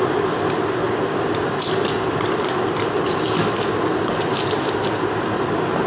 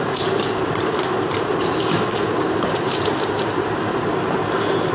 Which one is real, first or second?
first